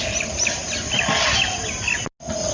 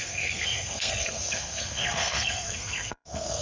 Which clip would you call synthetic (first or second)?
second